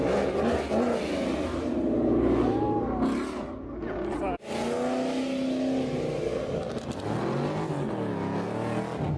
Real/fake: real